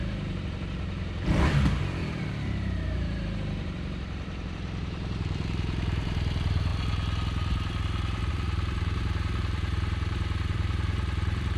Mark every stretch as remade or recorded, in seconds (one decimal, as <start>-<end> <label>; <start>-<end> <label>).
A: 0.0-6.7 remade; 6.7-8.3 recorded; 8.3-11.6 remade